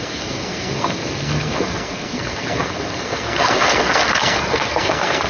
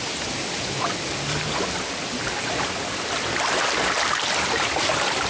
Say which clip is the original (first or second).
second